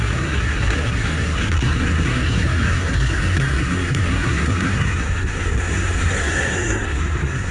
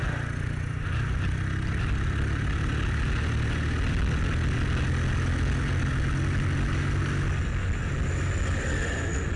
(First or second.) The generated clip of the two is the first